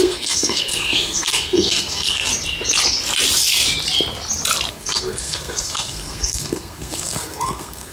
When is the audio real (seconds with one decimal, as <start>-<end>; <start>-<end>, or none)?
2.3-4.7